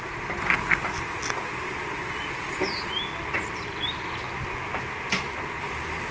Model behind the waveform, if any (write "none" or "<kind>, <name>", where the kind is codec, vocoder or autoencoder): none